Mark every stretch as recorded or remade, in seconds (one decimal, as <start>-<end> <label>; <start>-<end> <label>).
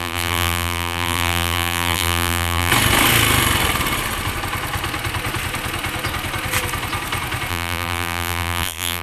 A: 0.0-2.7 remade; 2.7-7.5 recorded; 7.5-9.0 remade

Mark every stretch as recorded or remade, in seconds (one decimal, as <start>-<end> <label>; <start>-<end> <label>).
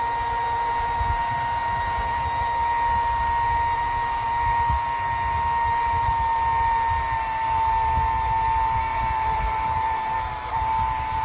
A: 0.0-8.9 recorded; 8.9-10.3 remade; 10.3-11.2 recorded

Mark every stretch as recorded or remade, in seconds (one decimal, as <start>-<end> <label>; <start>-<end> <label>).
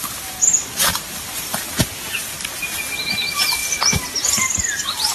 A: 0.0-0.6 recorded; 0.6-2.8 remade; 2.8-3.6 recorded; 3.6-5.1 remade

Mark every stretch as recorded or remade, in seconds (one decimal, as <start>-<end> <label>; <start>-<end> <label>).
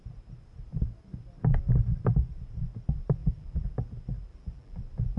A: 0.0-3.2 recorded; 3.2-3.7 remade; 3.7-4.3 recorded; 4.3-4.8 remade; 4.8-5.2 recorded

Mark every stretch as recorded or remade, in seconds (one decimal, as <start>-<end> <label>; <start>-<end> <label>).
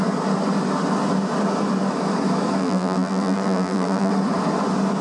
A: 0.0-2.6 recorded; 2.6-4.1 remade; 4.1-5.0 recorded